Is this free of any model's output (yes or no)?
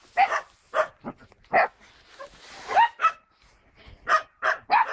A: yes